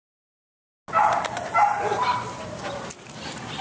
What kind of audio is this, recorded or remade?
recorded